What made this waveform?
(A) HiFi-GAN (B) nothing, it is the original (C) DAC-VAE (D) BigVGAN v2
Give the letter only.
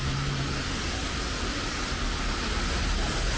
B